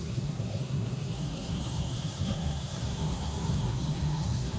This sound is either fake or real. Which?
fake